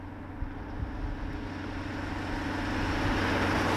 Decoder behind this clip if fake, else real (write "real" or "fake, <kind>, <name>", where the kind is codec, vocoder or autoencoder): real